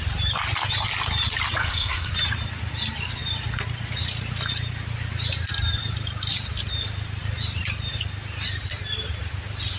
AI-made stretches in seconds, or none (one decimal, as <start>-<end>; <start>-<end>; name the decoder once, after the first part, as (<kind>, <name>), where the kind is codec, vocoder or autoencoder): 1.6-2.1 (codec, SNAC)